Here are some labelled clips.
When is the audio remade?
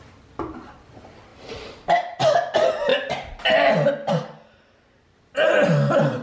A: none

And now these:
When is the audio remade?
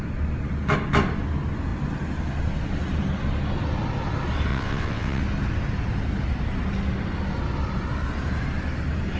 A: 4.5-5.2 (vocoder, WaveNeXt)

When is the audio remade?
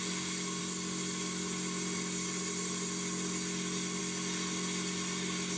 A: none